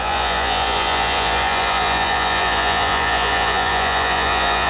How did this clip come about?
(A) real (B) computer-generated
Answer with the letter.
B